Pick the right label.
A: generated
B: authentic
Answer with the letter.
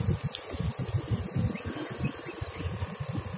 B